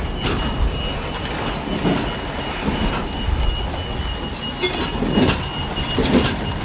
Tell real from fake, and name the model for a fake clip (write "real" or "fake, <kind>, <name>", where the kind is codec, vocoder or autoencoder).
real